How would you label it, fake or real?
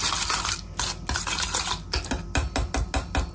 real